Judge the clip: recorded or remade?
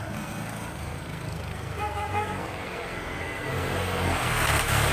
remade